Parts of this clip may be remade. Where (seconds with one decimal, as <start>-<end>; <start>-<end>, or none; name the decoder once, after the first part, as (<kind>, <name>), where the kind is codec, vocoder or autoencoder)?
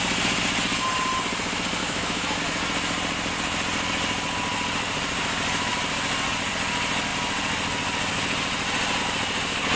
1.8-2.4 (autoencoder, DAC-VAE)